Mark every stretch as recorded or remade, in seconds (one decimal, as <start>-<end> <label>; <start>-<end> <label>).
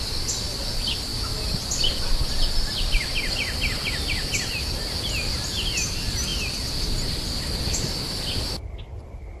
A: 0.0-9.4 recorded